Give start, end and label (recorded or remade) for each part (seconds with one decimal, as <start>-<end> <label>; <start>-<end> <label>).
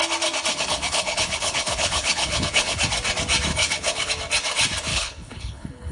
0.0-0.5 recorded; 0.5-2.8 remade; 2.8-3.5 recorded; 3.5-4.1 remade; 4.1-4.9 recorded; 4.9-5.9 remade